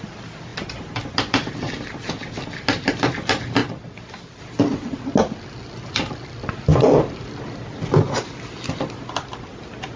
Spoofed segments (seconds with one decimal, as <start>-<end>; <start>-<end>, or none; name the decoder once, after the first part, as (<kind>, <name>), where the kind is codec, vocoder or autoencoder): 3.6-4.4 (vocoder, BigVGAN v2)